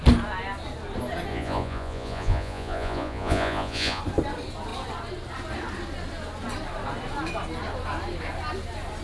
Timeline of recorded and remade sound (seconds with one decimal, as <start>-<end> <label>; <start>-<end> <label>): 0.0-1.3 recorded; 1.3-4.0 remade; 4.0-9.0 recorded